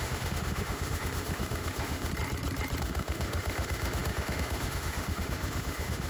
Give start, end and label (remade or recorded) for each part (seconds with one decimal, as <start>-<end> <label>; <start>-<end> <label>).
0.0-2.1 remade; 2.1-2.8 recorded; 2.8-6.1 remade